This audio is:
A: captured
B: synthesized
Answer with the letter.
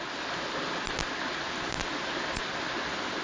A